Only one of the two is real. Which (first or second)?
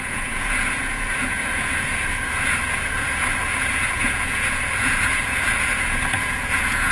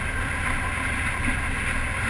second